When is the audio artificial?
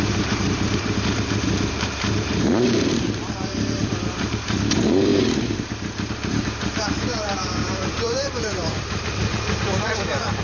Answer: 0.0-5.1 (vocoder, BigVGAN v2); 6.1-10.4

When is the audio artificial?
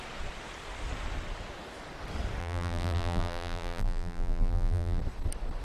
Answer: 2.4-5.0 (vocoder, BigVGAN v2)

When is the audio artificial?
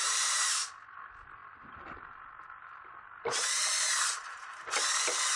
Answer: 0.0-0.7 (vocoder, BigVGAN v2); 1.4-4.6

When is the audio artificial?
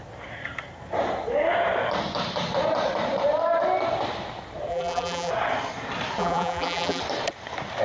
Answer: 4.7-5.3 (vocoder, BigVGAN v2); 6.2-7.0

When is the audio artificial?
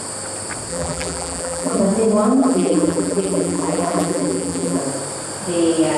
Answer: 0.7-1.8 (vocoder, BigVGAN v2); 2.4-4.8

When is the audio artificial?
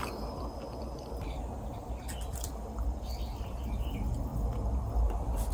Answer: 0.0-4.3 (vocoder, BigVGAN v2)